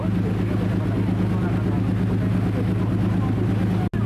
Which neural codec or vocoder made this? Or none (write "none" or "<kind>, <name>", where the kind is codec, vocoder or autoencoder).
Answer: none